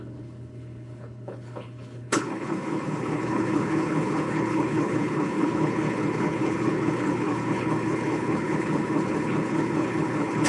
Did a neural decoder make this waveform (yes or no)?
yes